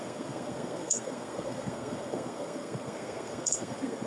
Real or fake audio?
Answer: fake